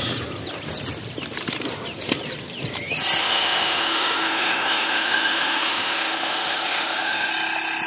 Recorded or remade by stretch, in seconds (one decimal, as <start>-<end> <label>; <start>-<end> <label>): 0.0-3.2 recorded; 3.2-7.3 remade; 7.3-7.9 recorded